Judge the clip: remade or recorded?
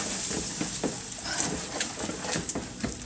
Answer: recorded